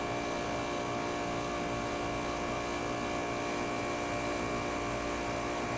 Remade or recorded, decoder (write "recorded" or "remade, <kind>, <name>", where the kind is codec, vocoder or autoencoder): recorded